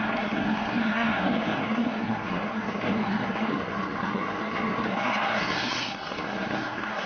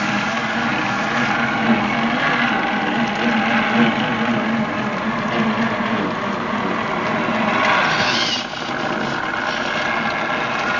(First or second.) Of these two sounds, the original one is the second